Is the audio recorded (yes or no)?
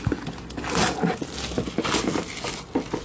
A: yes